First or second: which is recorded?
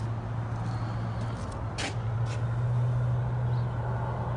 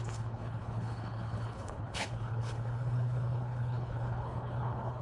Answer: first